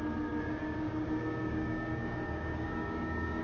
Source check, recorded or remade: remade